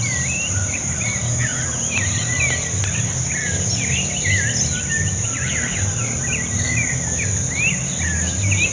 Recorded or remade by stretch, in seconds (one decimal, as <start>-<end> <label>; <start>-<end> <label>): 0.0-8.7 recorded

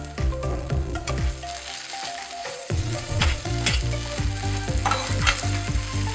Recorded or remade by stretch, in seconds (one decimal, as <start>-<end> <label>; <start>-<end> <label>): 0.0-0.5 recorded; 0.5-1.1 remade; 1.1-2.4 recorded; 2.4-3.5 remade; 3.5-6.1 recorded

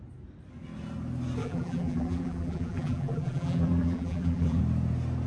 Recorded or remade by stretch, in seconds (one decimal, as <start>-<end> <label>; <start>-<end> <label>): 0.0-1.4 recorded; 1.4-4.6 remade; 4.6-5.3 recorded

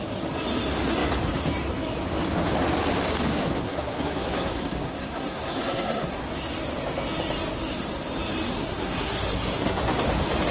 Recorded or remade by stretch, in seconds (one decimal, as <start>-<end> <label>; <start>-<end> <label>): 0.0-3.3 recorded; 3.3-6.2 remade; 6.2-8.5 recorded; 8.5-10.0 remade; 10.0-10.5 recorded